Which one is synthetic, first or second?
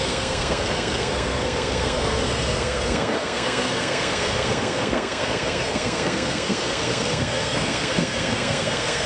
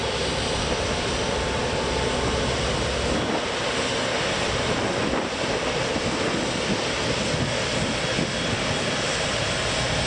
first